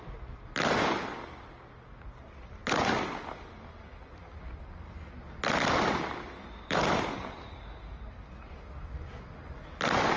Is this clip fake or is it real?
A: real